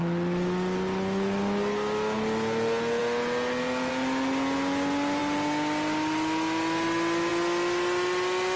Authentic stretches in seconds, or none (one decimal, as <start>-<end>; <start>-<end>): 0.0-8.6

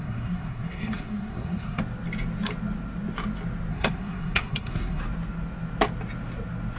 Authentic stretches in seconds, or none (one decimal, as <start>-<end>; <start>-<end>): 1.8-3.7; 5.0-6.8

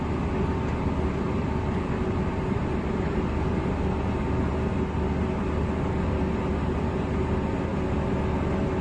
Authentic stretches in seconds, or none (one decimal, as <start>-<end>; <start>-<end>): 0.0-8.8

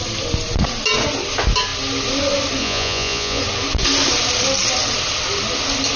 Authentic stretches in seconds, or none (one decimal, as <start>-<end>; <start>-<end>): 0.0-2.6; 3.4-6.0

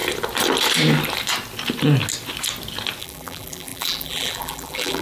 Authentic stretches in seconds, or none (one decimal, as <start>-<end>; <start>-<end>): 0.0-3.0

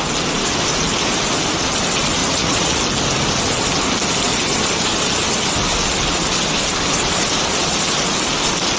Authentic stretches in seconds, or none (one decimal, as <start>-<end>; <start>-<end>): 0.0-2.2; 2.8-8.8